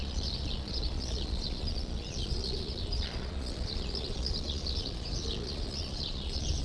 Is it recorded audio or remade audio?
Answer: remade